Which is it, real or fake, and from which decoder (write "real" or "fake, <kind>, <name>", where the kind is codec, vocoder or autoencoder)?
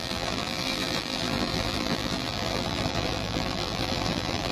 fake, vocoder, BigVGAN v2